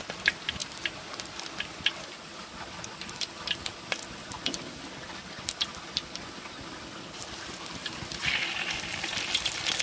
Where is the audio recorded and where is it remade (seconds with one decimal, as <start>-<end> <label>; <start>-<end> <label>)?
0.0-2.3 remade; 2.3-4.8 recorded; 4.8-9.8 remade